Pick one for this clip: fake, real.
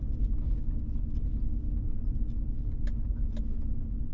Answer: real